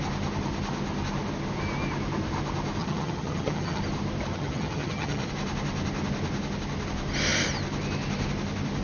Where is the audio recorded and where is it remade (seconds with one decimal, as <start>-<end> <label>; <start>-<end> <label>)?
0.0-2.8 recorded; 2.8-3.8 remade; 3.8-4.3 recorded; 4.3-5.3 remade; 5.3-8.8 recorded